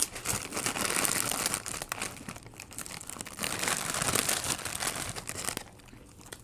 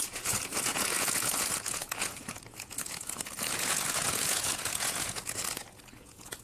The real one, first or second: first